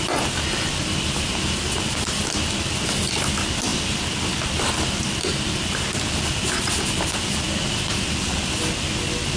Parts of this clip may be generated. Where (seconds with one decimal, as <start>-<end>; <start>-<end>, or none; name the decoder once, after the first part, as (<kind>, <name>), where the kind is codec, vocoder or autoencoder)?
none